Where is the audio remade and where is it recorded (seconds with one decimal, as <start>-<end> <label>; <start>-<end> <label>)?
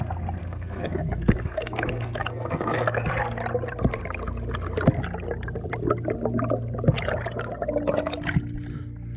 0.0-0.4 recorded; 0.4-3.1 remade; 3.1-9.2 recorded